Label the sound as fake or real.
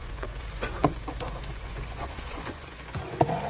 fake